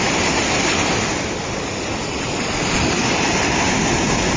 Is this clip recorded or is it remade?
remade